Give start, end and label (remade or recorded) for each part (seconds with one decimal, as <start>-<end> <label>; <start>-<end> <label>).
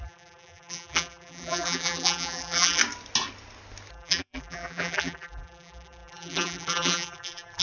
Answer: 0.0-2.8 remade; 2.8-3.9 recorded; 3.9-7.6 remade